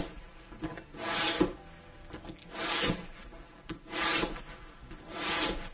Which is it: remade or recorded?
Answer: recorded